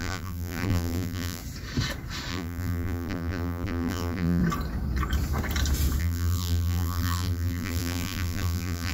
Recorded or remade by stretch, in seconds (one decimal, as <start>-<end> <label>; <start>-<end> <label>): 0.0-1.4 remade; 1.4-2.3 recorded; 2.3-4.4 remade; 4.4-6.0 recorded; 6.0-8.9 remade